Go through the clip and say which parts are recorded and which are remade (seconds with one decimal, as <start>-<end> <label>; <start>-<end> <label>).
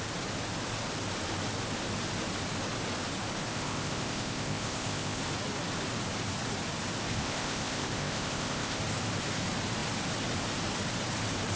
0.0-3.5 recorded; 3.5-5.2 remade; 5.2-7.1 recorded; 7.1-8.8 remade; 8.8-11.6 recorded